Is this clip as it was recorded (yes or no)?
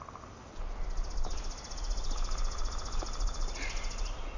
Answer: yes